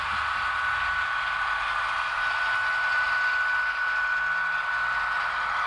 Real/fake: real